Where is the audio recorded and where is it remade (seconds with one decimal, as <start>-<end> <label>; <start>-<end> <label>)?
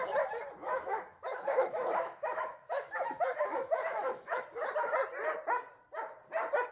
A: 0.0-0.6 recorded; 0.6-4.4 remade; 4.4-6.7 recorded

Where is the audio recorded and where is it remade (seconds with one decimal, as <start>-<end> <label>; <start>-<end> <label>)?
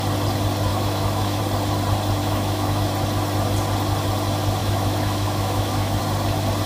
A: 0.0-0.7 recorded; 0.7-1.4 remade; 1.4-2.2 recorded; 2.2-2.8 remade; 2.8-4.6 recorded; 4.6-6.0 remade; 6.0-6.7 recorded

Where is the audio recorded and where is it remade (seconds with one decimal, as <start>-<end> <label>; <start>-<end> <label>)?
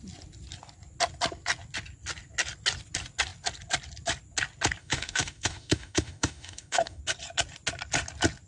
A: 0.0-4.8 recorded; 4.8-7.0 remade; 7.0-8.5 recorded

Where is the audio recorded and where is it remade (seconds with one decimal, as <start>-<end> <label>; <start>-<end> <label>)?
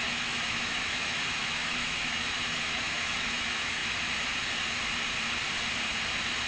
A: 0.0-3.8 remade; 3.8-6.5 recorded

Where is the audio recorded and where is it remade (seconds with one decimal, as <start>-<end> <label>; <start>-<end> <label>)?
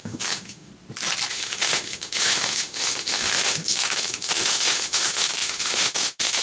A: 0.0-0.7 remade; 0.7-1.3 recorded; 1.3-6.4 remade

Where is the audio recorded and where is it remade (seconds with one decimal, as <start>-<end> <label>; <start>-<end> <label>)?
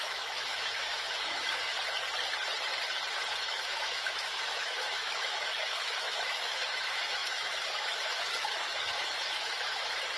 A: 0.0-1.7 remade; 1.7-3.4 recorded; 3.4-10.2 remade